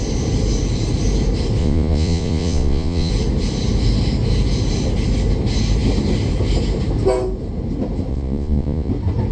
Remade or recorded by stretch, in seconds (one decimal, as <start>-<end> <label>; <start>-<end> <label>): 0.0-1.6 recorded; 1.6-3.1 remade; 3.1-8.1 recorded; 8.1-8.9 remade; 8.9-9.3 recorded